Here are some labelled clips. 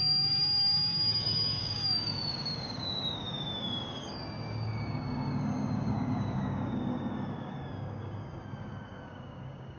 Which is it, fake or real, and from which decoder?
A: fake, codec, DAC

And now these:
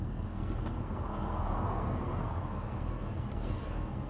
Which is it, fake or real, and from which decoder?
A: fake, codec, SNAC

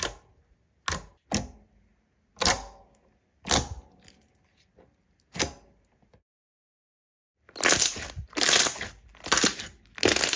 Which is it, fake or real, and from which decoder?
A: real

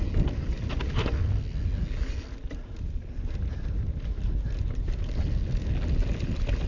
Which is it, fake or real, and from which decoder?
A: real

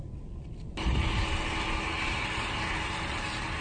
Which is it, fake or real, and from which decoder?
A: real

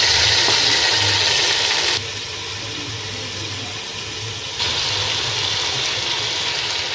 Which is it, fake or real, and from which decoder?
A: real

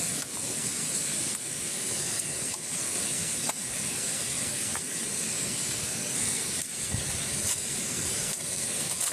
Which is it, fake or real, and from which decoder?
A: fake, codec, SNAC